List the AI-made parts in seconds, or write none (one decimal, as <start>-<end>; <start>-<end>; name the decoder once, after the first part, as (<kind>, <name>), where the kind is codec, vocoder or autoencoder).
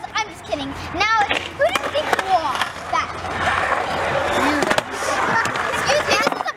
none